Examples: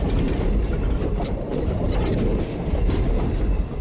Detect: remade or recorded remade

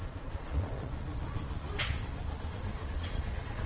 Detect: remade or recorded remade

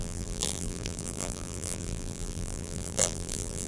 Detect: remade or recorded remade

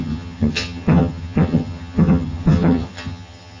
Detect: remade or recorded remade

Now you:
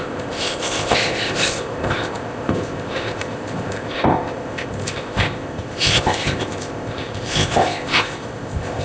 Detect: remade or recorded remade